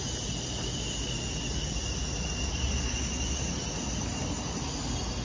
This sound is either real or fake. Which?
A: real